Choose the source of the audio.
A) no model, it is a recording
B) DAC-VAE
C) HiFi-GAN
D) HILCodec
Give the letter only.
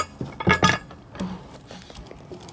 A